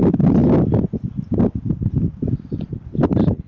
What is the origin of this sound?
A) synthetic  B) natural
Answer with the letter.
B